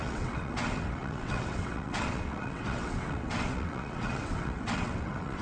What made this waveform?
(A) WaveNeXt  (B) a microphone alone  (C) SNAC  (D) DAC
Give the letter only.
A